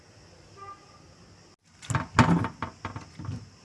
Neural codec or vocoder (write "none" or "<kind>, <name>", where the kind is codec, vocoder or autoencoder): none